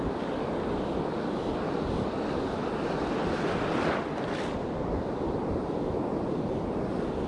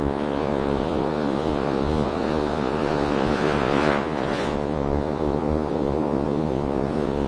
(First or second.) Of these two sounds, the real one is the first